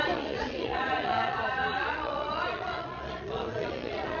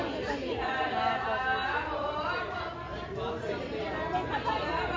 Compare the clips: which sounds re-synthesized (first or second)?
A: first